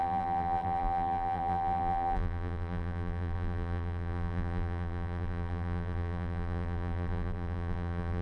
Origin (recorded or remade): remade